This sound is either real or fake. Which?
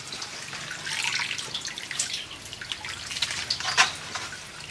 real